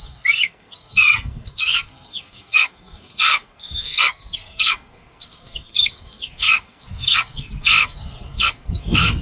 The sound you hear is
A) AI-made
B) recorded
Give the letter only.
A